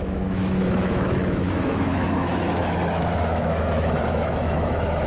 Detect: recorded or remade remade